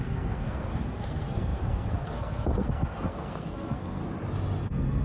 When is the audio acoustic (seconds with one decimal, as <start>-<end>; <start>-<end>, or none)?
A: 4.0-4.6